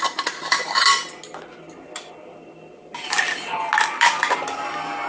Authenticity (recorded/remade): recorded